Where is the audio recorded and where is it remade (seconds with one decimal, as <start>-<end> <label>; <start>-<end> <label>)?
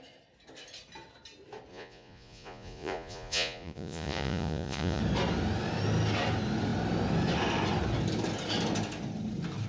0.0-1.7 recorded; 1.7-5.0 remade; 5.0-9.7 recorded